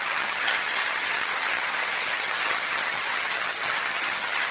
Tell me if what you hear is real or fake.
fake